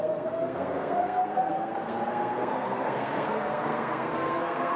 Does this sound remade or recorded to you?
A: remade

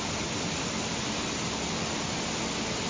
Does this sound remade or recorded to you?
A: recorded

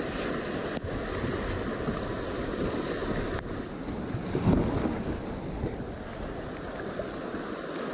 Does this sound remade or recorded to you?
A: recorded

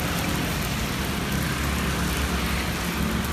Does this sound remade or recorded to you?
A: recorded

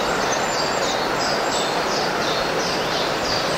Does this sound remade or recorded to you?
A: recorded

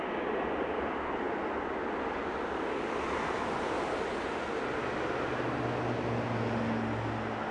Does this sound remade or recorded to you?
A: recorded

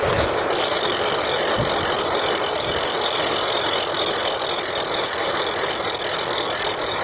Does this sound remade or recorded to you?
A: recorded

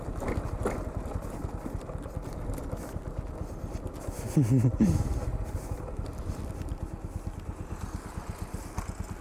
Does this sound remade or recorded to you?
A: recorded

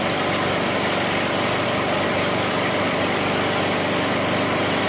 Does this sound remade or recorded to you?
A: recorded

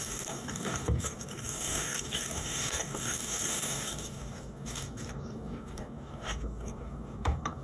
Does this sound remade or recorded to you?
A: remade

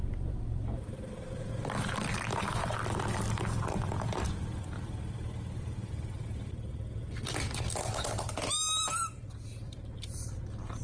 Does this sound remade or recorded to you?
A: remade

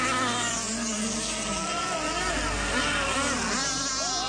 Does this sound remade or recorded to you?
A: recorded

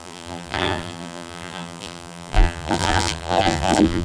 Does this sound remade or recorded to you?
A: remade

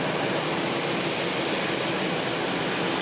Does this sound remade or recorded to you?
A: recorded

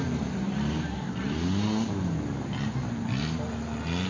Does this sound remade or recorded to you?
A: recorded